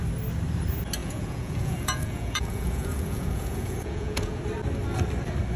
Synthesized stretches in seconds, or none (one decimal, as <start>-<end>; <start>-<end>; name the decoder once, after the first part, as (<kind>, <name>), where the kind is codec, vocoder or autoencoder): 1.0-4.4 (vocoder, Vocos)